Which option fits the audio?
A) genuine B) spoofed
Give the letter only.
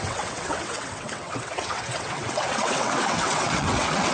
B